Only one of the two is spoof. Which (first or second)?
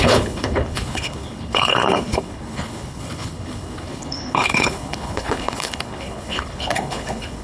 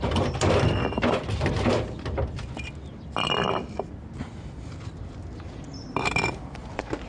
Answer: first